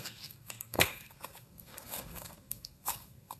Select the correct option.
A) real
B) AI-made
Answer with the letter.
B